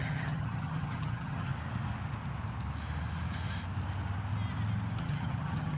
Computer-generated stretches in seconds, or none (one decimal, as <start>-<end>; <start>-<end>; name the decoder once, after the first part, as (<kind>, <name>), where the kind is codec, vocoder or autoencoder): 0.0-1.5 (vocoder, HiFi-GAN); 5.0-5.8